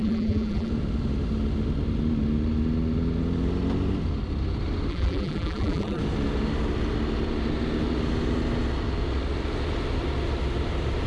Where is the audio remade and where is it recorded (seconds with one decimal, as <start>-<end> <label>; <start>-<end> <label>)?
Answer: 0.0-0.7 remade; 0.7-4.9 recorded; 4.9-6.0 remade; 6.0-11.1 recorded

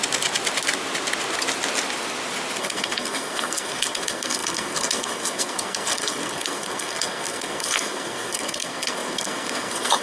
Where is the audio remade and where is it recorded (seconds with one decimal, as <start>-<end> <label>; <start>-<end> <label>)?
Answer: 0.0-2.6 recorded; 2.6-10.0 remade

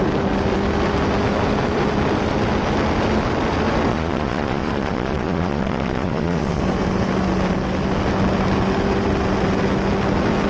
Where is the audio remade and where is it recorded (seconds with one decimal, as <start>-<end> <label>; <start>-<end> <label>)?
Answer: 0.0-3.9 recorded; 3.9-6.6 remade; 6.6-10.5 recorded